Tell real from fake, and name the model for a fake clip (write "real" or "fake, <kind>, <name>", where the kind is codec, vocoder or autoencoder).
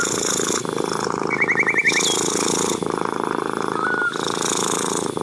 real